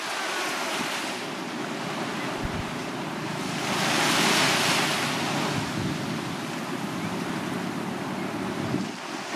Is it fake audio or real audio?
real